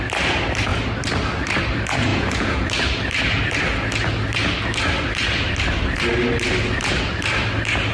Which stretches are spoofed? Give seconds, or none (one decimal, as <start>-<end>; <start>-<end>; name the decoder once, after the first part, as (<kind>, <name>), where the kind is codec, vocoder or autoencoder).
2.1-2.7 (vocoder, Vocos)